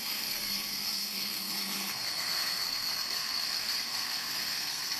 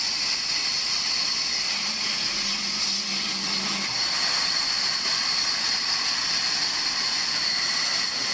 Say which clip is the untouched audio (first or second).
second